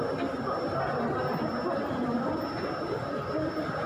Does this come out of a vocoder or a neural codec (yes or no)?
no